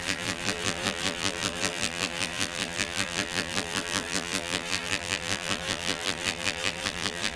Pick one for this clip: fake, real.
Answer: fake